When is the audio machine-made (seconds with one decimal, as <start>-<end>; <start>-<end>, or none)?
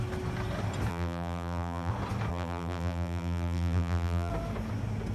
0.9-1.9; 2.3-4.3